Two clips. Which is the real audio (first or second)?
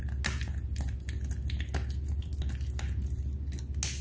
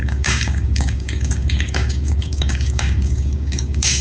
first